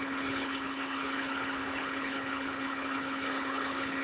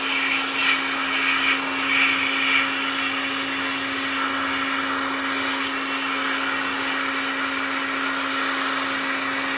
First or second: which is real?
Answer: second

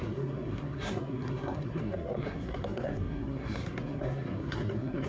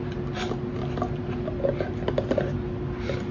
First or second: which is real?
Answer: second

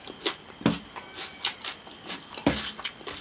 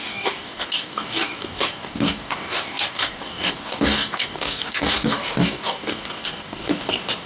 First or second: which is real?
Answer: first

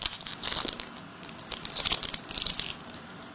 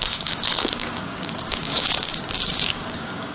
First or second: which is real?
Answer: first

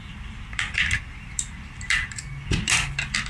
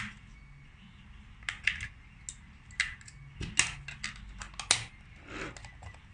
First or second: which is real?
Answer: second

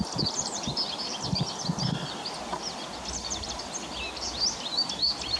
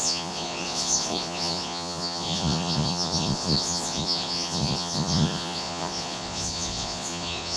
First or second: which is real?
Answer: first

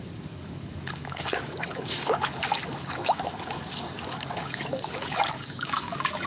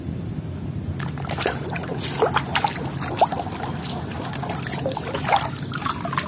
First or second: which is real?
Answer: second